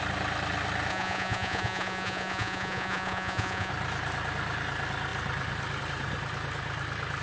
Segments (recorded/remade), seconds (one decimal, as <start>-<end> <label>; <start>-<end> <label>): 0.0-0.9 recorded; 0.9-3.7 remade; 3.7-7.2 recorded